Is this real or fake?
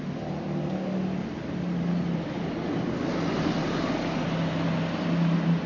real